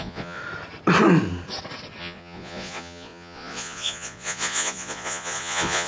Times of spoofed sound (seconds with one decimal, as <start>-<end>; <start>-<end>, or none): 0.0-0.4; 2.0-5.9